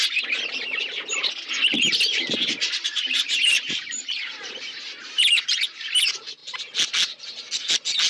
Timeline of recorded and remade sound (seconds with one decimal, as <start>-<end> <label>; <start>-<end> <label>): 0.0-2.6 recorded; 2.6-5.9 remade; 5.9-8.1 recorded